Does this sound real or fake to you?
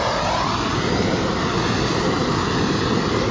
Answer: real